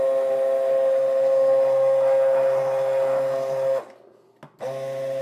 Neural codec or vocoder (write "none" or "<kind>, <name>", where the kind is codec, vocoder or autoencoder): none